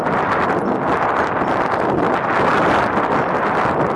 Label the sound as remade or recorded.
recorded